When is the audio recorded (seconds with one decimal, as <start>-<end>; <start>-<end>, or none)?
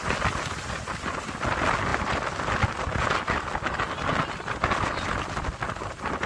0.0-6.3